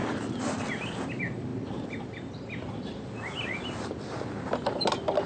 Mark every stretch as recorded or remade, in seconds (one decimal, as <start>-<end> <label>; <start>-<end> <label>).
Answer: 0.0-0.6 remade; 0.6-1.5 recorded; 1.5-3.9 remade; 3.9-5.3 recorded